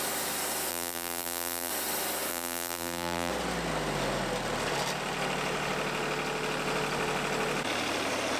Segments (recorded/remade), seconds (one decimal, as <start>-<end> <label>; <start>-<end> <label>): 0.0-0.7 recorded; 0.7-1.7 remade; 1.7-2.3 recorded; 2.3-3.3 remade; 3.3-8.4 recorded